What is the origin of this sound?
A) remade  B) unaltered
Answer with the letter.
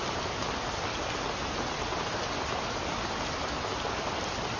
B